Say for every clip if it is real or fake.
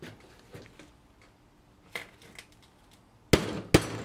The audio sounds real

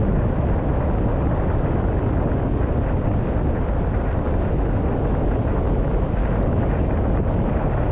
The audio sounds real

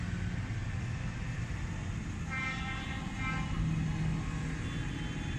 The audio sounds real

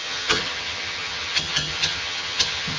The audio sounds fake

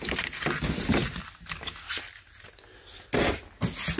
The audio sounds real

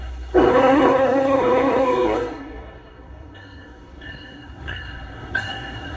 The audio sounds fake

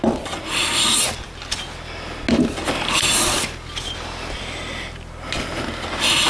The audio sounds real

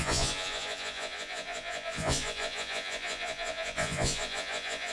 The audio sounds fake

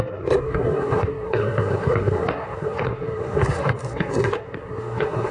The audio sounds fake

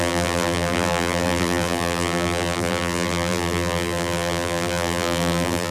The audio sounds fake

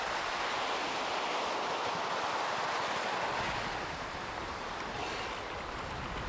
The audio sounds real